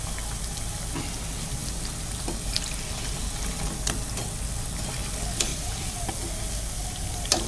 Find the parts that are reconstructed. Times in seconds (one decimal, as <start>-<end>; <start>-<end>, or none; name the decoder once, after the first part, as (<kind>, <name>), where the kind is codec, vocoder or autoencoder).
5.5-6.1 (vocoder, BigVGAN v2)